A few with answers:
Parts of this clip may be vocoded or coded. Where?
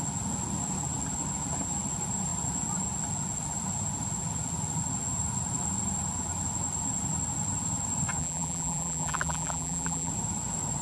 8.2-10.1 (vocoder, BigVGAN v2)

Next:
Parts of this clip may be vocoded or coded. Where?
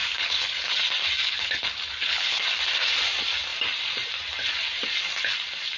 0.0-0.7 (codec, HILCodec); 1.2-2.4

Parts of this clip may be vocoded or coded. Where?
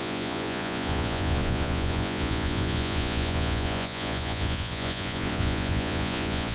0.0-6.5 (vocoder, Vocos)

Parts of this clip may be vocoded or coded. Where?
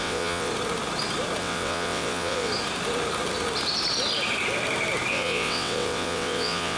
0.0-0.5 (vocoder, WaveNeXt); 1.4-2.5; 5.1-6.8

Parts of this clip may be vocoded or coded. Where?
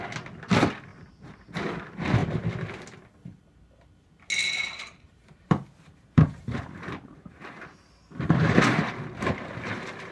0.9-1.8 (vocoder, BigVGAN v2); 4.8-10.1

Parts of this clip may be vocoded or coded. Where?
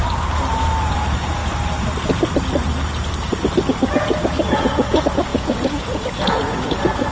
0.9-1.4 (vocoder, Vocos); 4.6-7.1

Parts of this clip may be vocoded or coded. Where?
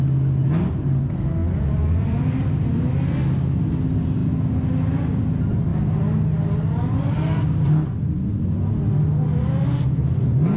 none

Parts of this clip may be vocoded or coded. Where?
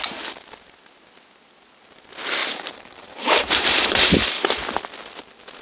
2.4-4.4 (vocoder, BigVGAN v2)